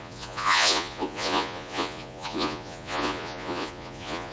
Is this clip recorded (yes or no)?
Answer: no